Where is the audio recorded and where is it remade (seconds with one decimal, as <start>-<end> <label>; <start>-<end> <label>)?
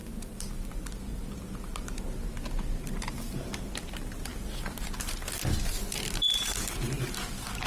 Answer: 0.0-7.7 recorded